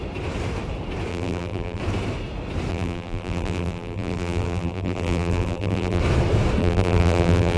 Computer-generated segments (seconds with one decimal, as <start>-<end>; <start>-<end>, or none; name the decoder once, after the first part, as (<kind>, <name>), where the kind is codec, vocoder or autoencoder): 1.1-1.8 (vocoder, BigVGAN v2); 2.7-6.0; 6.6-7.6